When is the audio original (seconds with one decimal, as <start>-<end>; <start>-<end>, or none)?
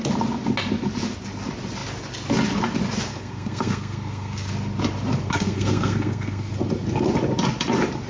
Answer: 0.0-3.1; 4.5-5.2; 6.5-8.1